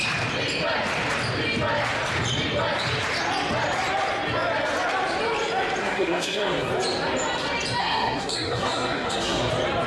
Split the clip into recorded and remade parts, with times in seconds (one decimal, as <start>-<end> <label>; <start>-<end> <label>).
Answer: 0.0-5.8 recorded; 5.8-6.7 remade; 6.7-7.8 recorded; 7.8-9.5 remade; 9.5-9.9 recorded